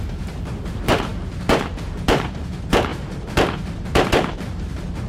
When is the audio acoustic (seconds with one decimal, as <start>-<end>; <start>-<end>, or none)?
none